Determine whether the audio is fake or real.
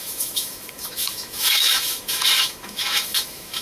fake